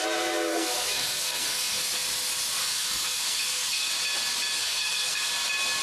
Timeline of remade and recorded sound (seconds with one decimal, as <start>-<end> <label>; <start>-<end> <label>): 0.0-0.5 recorded; 0.5-1.8 remade; 1.8-2.6 recorded; 2.6-3.9 remade; 3.9-4.6 recorded; 4.6-5.3 remade; 5.3-5.8 recorded